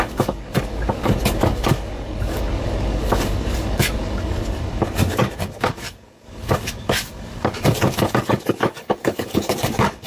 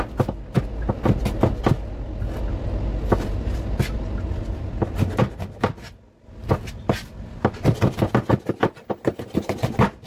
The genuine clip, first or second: second